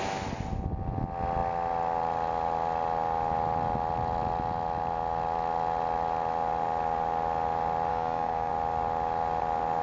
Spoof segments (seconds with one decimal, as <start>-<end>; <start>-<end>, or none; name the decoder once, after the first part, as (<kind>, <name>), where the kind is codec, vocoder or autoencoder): 7.9-8.5 (codec, DAC)